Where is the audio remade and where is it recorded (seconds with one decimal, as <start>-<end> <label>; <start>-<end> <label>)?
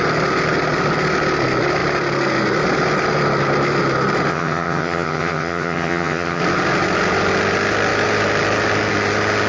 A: 0.0-4.3 recorded; 4.3-6.4 remade; 6.4-9.5 recorded